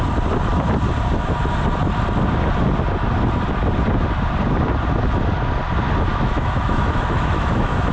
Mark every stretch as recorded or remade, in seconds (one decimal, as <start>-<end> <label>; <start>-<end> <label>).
0.0-6.1 recorded; 6.1-7.9 remade